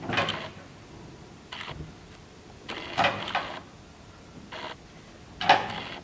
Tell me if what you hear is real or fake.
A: real